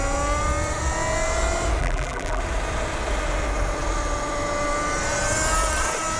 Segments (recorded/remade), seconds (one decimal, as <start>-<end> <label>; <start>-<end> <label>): 0.0-1.8 recorded; 1.8-2.4 remade; 2.4-6.2 recorded